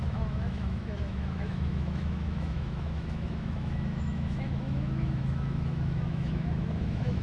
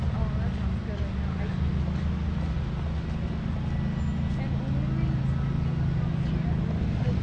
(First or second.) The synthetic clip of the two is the first